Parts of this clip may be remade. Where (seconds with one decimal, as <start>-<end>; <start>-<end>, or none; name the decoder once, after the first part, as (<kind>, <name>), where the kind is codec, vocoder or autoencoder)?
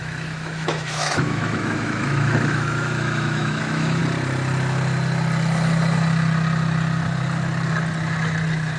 0.0-4.0 (autoencoder, DAC-VAE)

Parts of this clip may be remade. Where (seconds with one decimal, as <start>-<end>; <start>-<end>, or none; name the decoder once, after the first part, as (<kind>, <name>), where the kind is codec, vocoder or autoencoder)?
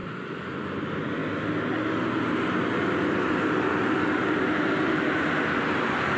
none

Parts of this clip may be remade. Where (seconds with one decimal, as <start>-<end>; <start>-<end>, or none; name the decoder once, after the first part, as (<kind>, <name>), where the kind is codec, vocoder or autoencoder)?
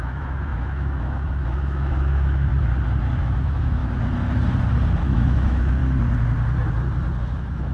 0.0-2.5 (autoencoder, DAC-VAE); 3.2-3.8; 5.0-5.8; 7.2-7.7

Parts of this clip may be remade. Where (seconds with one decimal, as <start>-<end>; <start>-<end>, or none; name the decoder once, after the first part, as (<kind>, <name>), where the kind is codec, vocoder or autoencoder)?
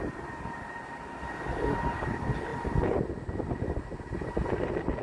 none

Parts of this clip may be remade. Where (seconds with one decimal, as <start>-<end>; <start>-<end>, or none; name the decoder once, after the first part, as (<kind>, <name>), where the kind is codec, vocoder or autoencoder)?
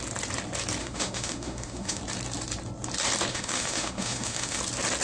0.8-2.0 (autoencoder, DAC-VAE); 3.3-4.6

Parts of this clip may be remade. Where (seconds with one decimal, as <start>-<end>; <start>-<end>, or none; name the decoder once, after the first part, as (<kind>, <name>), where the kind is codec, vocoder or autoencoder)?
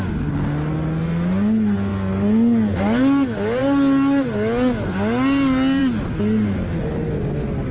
none